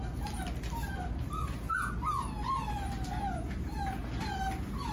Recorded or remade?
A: recorded